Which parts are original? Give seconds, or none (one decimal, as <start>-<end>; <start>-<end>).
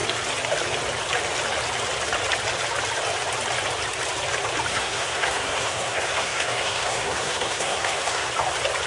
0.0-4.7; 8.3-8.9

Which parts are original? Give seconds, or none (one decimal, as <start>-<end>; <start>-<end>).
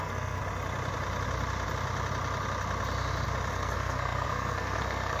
0.4-3.5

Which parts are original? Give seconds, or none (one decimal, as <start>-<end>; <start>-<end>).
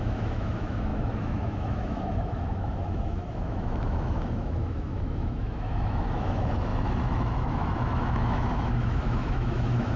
none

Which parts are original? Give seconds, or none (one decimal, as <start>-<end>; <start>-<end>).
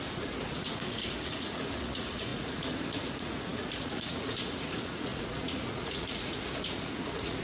none